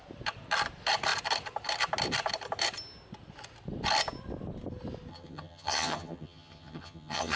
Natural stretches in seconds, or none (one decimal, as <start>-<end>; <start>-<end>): 0.0-5.1